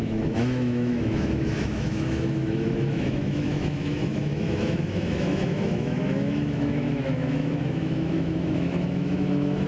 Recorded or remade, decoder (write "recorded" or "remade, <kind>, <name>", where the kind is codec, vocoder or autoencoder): remade, autoencoder, DAC-VAE